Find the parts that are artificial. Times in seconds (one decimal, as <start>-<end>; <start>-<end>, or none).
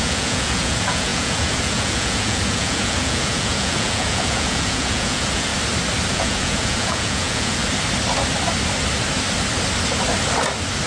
0.0-5.5; 6.1-7.6